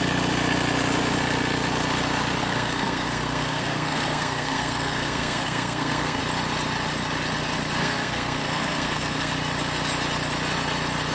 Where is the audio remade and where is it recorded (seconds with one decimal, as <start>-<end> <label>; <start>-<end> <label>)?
0.0-2.4 recorded; 2.4-6.2 remade; 6.2-7.8 recorded; 7.8-9.3 remade; 9.3-11.1 recorded